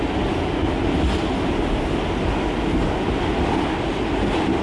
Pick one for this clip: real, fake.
real